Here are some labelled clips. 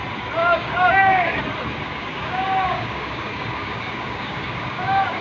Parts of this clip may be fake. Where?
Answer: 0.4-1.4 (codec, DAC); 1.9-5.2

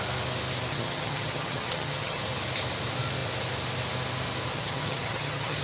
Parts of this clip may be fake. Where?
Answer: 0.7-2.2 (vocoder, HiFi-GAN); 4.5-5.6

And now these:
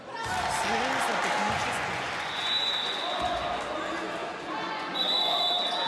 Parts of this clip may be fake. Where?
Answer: 1.6-3.6 (vocoder, Vocos); 4.2-5.4

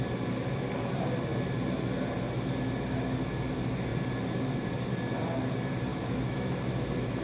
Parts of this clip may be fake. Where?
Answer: 5.9-6.6 (autoencoder, DAC-VAE)